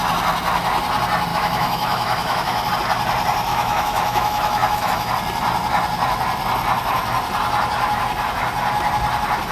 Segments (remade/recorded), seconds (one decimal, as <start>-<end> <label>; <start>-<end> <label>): 0.0-1.3 recorded; 1.3-2.7 remade; 2.7-3.5 recorded; 3.5-5.1 remade; 5.1-9.5 recorded